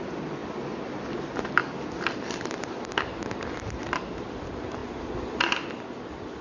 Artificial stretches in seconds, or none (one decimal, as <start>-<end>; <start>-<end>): none